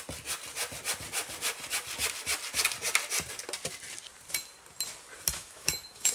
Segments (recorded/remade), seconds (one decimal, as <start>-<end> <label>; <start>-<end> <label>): 0.0-5.4 recorded; 5.4-6.1 remade